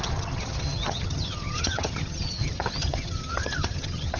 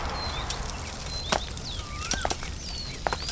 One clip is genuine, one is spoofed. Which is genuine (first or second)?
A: second